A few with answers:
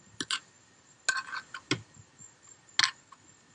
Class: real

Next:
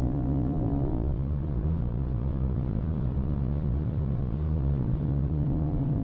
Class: fake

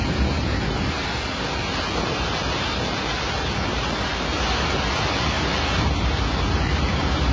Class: real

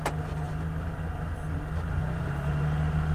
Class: real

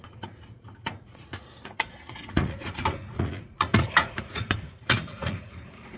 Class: fake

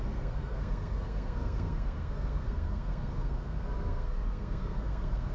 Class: fake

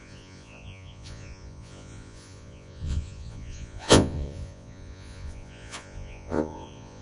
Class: fake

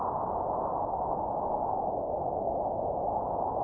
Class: real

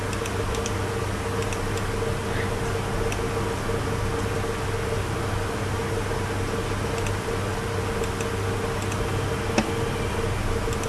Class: real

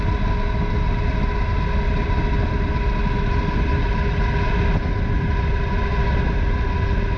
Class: real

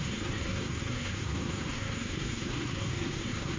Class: fake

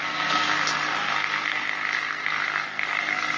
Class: fake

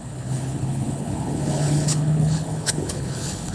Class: fake